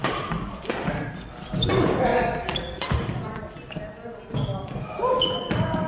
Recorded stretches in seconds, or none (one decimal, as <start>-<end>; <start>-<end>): 0.0-5.9